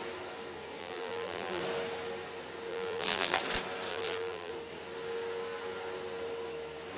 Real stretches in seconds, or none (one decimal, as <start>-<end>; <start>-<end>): 0.0-0.8; 1.6-2.7; 3.4-3.9; 4.5-7.0